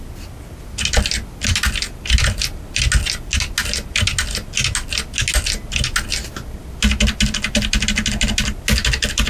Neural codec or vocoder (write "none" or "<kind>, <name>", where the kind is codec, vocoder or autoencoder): none